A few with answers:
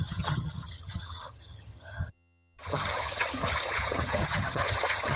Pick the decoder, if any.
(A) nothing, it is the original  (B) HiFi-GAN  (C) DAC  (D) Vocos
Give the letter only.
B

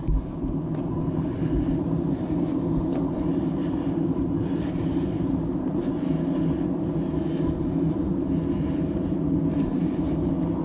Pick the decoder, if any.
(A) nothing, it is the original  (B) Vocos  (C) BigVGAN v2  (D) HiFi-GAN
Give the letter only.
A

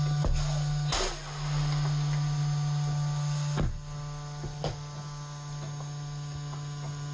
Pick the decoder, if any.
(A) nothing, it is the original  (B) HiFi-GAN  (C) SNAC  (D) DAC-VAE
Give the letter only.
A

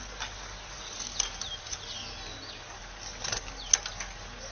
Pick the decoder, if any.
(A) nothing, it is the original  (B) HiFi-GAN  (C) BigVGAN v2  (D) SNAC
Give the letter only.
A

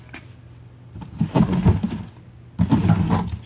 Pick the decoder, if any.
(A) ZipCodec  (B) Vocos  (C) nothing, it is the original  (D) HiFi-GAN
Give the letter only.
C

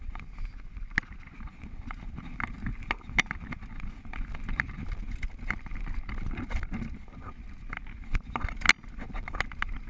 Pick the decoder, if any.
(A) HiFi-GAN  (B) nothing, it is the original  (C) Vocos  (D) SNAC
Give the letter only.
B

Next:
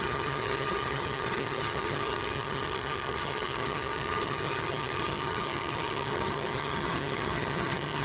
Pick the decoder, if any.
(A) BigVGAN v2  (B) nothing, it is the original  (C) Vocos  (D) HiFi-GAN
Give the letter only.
D